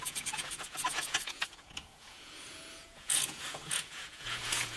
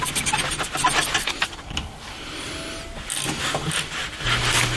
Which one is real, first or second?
second